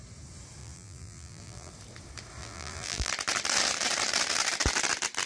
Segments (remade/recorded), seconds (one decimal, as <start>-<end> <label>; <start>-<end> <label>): 0.0-0.6 recorded; 0.6-1.7 remade; 1.7-2.4 recorded; 2.4-3.1 remade; 3.1-5.3 recorded